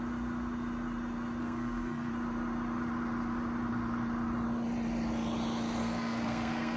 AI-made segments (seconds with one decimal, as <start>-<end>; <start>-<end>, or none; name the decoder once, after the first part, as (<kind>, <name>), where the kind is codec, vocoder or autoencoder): 1.4-2.1 (codec, SNAC); 5.8-6.8